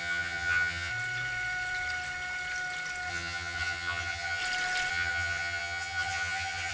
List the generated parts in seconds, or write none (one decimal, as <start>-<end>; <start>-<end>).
0.0-0.9; 3.1-4.4; 4.9-6.7